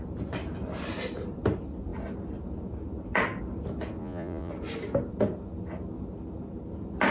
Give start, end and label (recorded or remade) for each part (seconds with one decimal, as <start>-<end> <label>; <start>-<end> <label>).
0.0-4.0 recorded; 4.0-4.5 remade; 4.5-7.1 recorded